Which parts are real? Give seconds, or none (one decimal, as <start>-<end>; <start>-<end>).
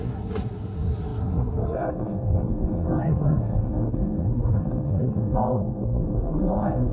none